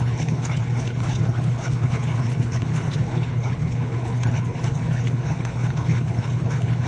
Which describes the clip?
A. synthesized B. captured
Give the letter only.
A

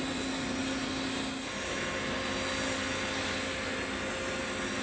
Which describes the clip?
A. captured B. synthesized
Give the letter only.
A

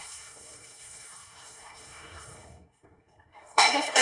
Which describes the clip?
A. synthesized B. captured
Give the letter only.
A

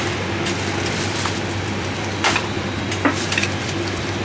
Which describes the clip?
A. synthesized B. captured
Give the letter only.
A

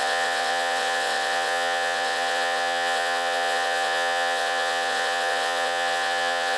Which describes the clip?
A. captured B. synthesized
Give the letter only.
B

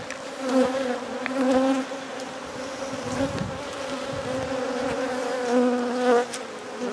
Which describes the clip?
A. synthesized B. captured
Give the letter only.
B